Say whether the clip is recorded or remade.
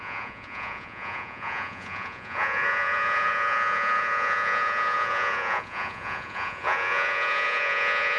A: remade